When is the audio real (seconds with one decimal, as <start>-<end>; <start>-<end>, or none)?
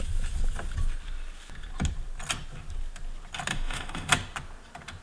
0.0-3.5; 4.1-5.0